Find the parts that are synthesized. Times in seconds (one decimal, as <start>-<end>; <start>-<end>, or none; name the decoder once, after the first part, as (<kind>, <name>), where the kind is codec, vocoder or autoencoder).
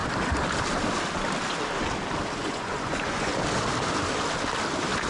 2.4-3.3 (vocoder, Vocos)